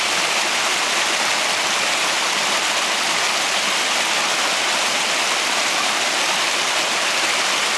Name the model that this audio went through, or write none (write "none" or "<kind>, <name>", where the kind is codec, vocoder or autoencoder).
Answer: none